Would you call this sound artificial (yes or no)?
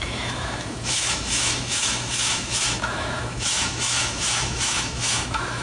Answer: yes